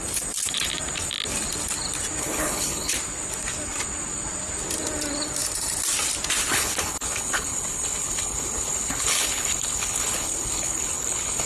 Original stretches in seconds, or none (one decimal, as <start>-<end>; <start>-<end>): 0.0-2.2; 2.9-6.5

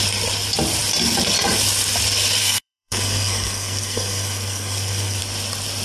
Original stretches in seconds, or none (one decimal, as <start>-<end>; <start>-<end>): 0.0-2.4; 5.2-5.8

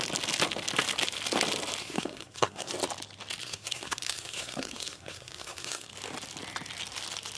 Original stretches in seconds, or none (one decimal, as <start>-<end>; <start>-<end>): 0.0-1.8; 2.7-3.4; 5.9-7.4